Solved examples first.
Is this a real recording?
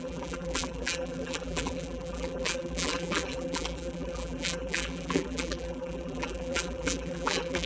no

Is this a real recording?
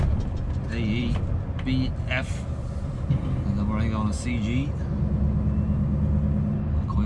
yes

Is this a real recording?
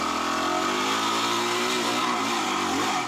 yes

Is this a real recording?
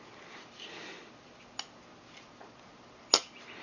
yes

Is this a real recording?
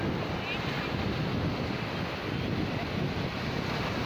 yes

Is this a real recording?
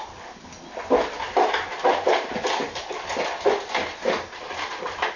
yes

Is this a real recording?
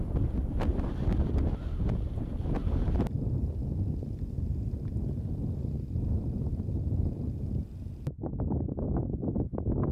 yes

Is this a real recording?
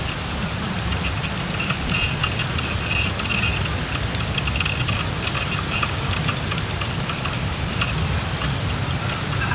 yes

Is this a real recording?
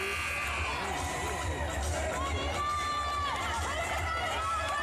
yes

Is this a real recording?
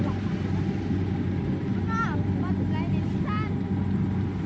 yes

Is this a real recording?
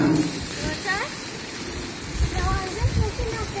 yes